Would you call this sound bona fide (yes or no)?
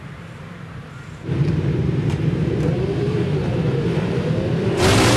no